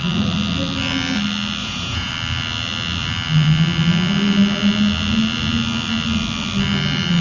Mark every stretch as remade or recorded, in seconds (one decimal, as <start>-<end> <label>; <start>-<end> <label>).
0.0-1.6 recorded; 1.6-2.1 remade; 2.1-7.2 recorded